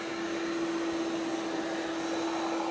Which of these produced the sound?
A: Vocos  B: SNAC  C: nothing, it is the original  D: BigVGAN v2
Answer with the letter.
C